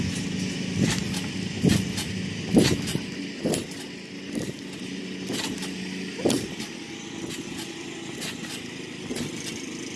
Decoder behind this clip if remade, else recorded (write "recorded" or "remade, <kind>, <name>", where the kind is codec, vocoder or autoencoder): recorded